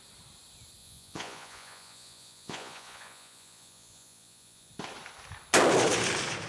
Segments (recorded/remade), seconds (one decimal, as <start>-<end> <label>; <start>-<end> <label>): 0.0-0.8 recorded; 0.8-4.7 remade; 4.7-6.5 recorded